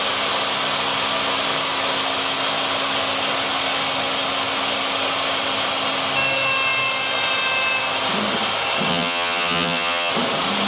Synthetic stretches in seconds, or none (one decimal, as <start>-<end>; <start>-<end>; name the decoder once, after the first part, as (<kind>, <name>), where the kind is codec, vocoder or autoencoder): 8.9-10.1 (vocoder, HiFi-GAN)